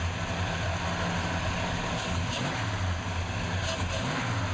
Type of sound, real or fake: real